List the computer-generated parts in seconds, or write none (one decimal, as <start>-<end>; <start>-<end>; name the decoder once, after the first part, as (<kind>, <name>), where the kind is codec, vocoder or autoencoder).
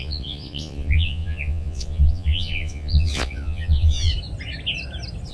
0.0-4.1 (vocoder, Vocos)